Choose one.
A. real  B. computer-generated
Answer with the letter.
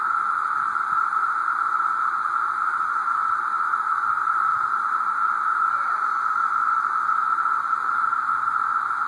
A